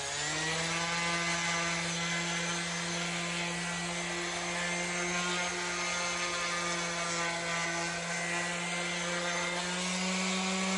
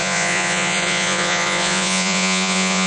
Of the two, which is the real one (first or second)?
first